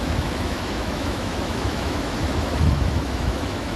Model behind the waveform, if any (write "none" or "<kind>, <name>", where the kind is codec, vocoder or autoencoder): autoencoder, DAC-VAE